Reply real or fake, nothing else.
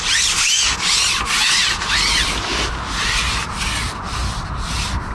real